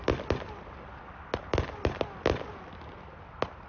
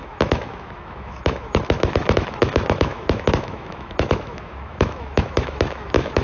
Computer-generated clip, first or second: second